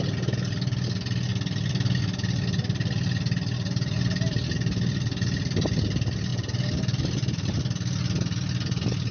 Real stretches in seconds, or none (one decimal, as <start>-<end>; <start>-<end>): 0.0-6.3; 7.5-9.1

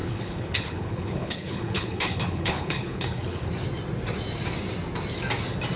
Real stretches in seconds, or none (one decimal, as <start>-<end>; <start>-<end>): 3.5-5.8

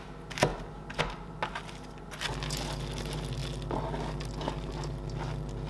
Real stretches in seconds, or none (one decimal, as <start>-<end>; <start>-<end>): 0.0-5.7

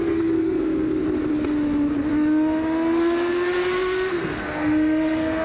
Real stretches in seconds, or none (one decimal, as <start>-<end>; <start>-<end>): 1.0-3.7

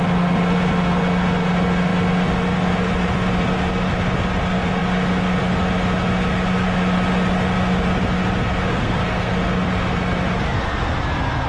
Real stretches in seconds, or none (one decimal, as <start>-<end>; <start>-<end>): 0.0-8.7; 9.3-11.5

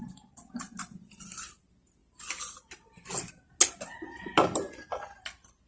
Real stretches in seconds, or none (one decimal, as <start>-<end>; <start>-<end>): 0.0-5.7